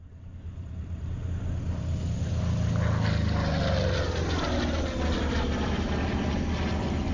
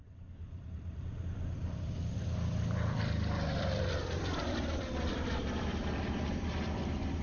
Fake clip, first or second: second